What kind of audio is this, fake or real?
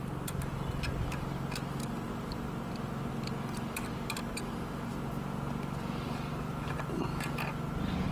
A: real